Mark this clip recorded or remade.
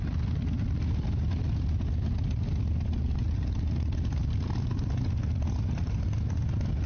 recorded